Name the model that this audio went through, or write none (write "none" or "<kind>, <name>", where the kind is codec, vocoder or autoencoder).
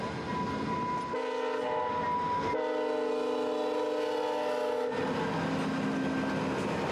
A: none